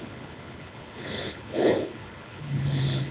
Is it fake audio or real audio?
fake